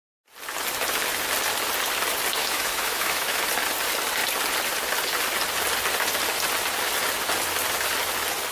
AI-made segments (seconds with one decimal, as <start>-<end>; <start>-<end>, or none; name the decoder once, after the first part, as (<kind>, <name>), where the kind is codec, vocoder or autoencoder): 2.4-3.4 (autoencoder, DAC-VAE)

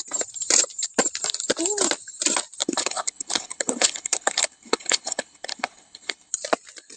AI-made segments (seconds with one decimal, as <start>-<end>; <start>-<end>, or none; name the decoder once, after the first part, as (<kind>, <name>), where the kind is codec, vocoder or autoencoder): 2.6-6.3 (codec, HILCodec)

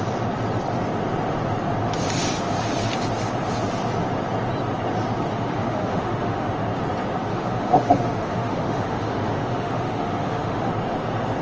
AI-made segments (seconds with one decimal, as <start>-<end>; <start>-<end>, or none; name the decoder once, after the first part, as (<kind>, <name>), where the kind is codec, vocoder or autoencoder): 5.3-6.5 (autoencoder, DAC-VAE); 7.3-10.7

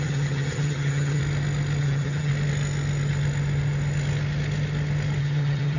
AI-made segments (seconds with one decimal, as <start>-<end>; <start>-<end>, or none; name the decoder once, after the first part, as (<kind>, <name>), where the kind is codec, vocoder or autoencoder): 0.0-1.2 (vocoder, HiFi-GAN); 1.8-2.3; 5.2-5.8

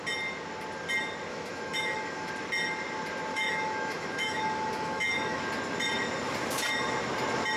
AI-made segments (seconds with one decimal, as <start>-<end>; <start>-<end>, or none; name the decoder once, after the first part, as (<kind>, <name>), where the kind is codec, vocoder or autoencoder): 1.3-2.3 (autoencoder, DAC-VAE); 3.3-5.4

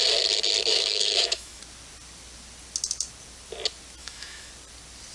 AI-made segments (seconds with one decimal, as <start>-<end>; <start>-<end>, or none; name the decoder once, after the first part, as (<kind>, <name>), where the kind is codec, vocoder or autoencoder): 0.7-1.6 (autoencoder, DAC-VAE); 4.0-4.5